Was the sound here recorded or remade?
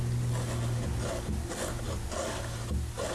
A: recorded